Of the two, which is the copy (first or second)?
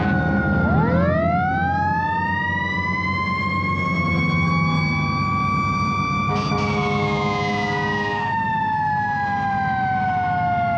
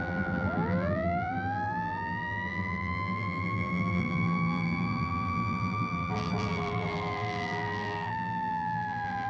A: second